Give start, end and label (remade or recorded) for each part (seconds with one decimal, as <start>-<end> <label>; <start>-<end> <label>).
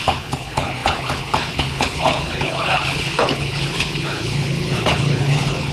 0.0-5.7 remade